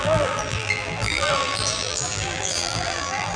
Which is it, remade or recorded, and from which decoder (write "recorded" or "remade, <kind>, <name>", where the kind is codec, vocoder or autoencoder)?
remade, vocoder, BigVGAN v2